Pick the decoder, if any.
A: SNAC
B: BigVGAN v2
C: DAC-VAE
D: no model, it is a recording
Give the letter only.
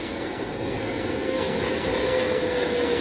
A